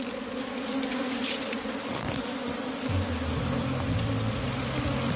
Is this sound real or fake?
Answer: real